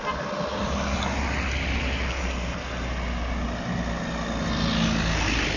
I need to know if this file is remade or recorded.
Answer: recorded